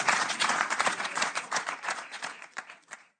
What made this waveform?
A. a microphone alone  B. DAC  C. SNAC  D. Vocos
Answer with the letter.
D